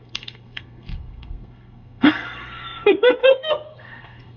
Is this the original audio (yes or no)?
no